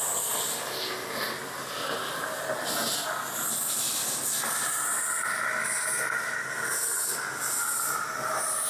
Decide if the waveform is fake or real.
real